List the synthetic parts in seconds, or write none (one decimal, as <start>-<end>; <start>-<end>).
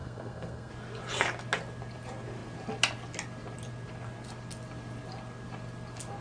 0.0-0.7